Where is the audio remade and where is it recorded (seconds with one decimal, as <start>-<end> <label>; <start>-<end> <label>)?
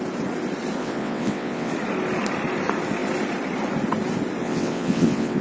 0.0-0.8 recorded; 0.8-1.7 remade; 1.7-4.4 recorded; 4.4-5.4 remade